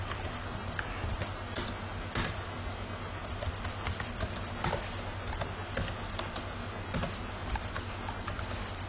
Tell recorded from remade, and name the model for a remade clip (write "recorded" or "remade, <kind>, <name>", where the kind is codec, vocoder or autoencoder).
recorded